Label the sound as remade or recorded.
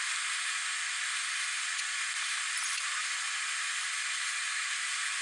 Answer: recorded